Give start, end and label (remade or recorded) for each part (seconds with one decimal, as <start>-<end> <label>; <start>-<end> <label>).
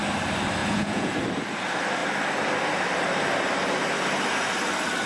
0.0-0.6 recorded; 0.6-1.1 remade; 1.1-5.1 recorded